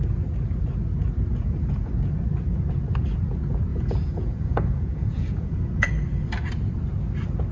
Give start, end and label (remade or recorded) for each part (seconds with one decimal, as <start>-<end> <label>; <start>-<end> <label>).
0.0-1.3 recorded; 1.3-1.9 remade; 1.9-3.7 recorded; 3.7-5.9 remade; 5.9-7.5 recorded